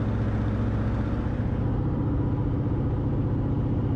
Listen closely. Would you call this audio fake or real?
real